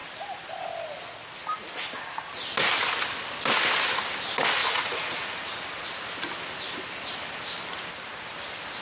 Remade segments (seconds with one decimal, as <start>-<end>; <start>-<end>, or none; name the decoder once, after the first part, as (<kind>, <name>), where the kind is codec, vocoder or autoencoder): 4.6-5.9 (vocoder, Vocos)